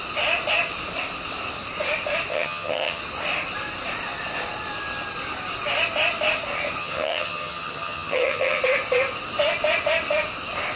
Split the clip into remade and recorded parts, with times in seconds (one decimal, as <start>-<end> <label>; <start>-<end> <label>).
0.0-2.3 recorded; 2.3-3.0 remade; 3.0-6.8 recorded; 6.8-8.6 remade; 8.6-10.8 recorded